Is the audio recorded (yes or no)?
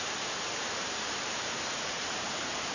no